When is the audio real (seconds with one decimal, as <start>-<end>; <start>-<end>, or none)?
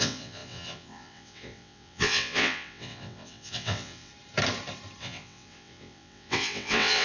4.1-5.0